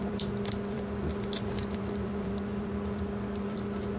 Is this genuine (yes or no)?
no